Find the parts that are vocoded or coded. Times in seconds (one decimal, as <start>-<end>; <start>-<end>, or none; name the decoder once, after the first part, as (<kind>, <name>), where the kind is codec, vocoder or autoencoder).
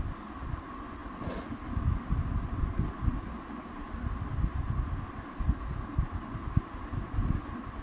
none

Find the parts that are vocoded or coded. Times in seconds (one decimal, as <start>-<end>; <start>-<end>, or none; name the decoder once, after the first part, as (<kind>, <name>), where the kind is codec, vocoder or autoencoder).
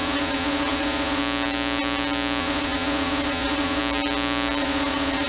0.0-1.2 (vocoder, Vocos); 2.4-3.8; 4.6-5.3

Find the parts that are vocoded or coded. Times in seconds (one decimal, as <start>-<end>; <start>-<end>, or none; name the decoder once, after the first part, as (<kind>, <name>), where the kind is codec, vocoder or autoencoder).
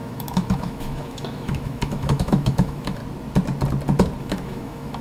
0.0-3.0 (autoencoder, DAC-VAE); 4.2-5.0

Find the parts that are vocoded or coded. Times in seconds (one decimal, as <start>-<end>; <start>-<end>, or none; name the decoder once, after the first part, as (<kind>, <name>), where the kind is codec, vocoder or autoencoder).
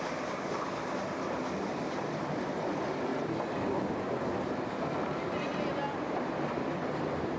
0.0-3.1 (vocoder, BigVGAN v2); 6.1-7.4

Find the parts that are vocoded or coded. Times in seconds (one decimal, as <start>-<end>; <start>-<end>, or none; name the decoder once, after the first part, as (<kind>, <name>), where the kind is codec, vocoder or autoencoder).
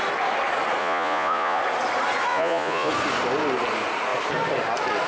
0.8-1.6 (vocoder, Vocos); 2.3-2.9